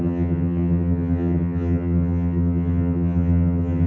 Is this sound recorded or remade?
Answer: remade